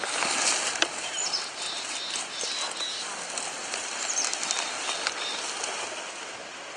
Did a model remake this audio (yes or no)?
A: no